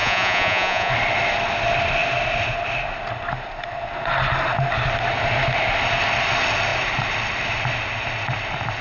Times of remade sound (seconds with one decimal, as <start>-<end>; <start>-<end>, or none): 0.0-0.9